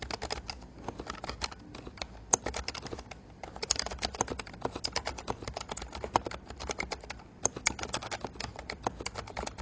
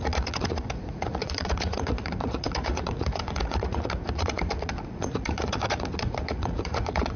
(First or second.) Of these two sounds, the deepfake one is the second